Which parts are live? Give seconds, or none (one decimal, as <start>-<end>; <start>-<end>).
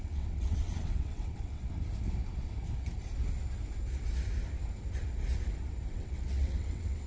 1.6-5.9